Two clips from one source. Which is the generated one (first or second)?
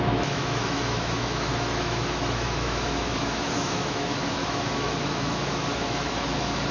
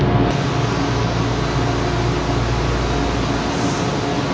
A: first